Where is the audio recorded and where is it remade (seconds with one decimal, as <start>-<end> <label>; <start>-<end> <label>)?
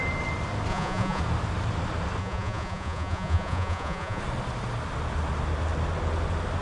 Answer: 0.0-0.7 recorded; 0.7-1.2 remade; 1.2-2.2 recorded; 2.2-4.2 remade; 4.2-6.6 recorded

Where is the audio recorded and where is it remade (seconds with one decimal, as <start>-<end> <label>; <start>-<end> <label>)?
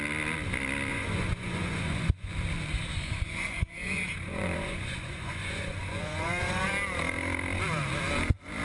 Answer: 0.0-0.9 recorded; 0.9-2.3 remade; 2.3-2.9 recorded; 2.9-6.7 remade; 6.7-8.6 recorded